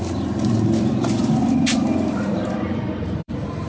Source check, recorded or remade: remade